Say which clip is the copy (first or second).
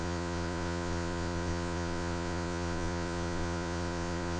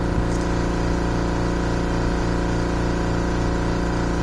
first